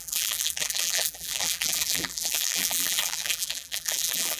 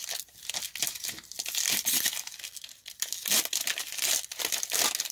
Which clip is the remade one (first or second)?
first